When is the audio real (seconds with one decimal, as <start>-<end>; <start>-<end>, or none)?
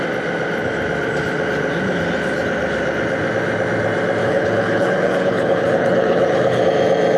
0.0-4.2; 6.6-7.2